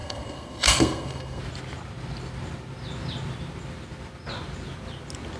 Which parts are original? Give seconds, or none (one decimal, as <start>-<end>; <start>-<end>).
1.4-5.4